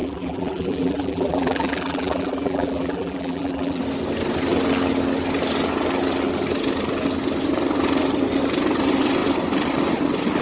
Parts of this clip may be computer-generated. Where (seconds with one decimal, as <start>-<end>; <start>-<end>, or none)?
0.0-3.8